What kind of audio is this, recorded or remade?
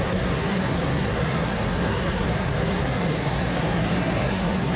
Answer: remade